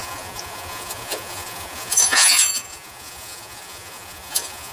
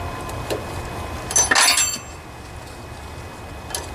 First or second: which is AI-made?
first